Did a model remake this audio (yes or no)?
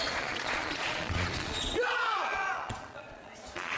yes